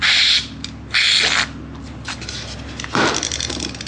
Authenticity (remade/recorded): recorded